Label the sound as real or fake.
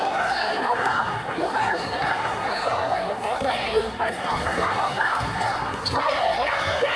fake